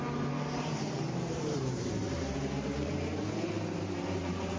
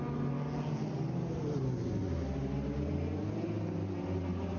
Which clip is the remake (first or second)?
first